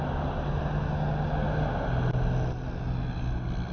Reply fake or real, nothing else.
real